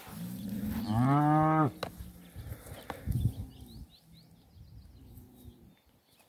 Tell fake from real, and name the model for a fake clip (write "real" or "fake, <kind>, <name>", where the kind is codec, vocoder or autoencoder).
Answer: real